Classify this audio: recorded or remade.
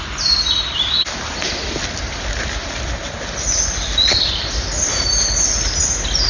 recorded